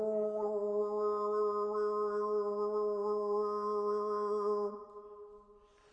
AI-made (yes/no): no